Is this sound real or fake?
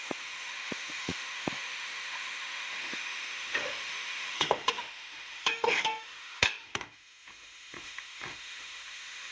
fake